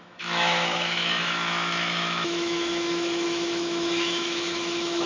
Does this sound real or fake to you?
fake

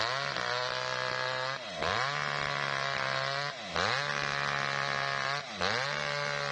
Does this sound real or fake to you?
real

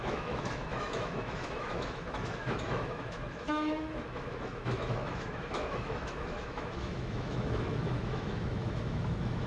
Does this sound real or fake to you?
fake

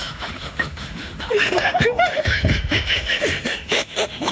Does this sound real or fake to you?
fake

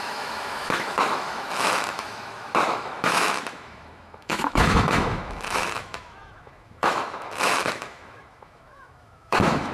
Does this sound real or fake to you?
fake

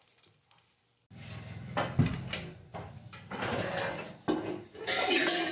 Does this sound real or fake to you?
real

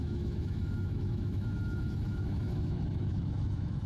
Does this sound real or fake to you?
fake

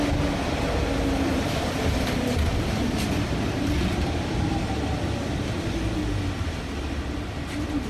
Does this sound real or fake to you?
real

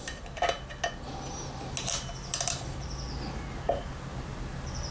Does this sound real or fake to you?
real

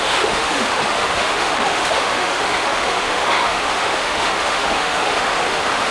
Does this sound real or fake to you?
fake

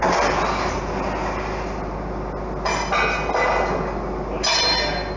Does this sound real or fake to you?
real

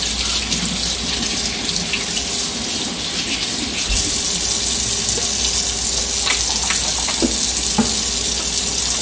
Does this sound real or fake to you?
real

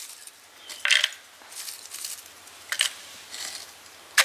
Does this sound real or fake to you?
real